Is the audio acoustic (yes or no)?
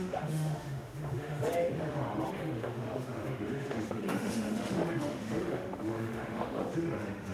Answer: no